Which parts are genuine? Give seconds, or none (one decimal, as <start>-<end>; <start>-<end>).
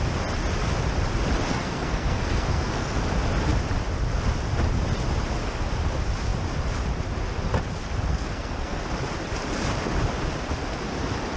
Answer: 0.0-1.5; 3.0-8.1; 8.8-11.4